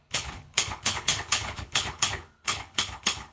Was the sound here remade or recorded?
remade